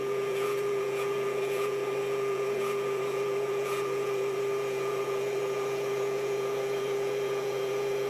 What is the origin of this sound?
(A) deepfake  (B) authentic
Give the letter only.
A